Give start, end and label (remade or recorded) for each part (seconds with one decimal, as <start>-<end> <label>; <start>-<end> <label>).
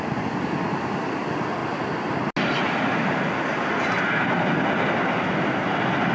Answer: 0.0-6.1 recorded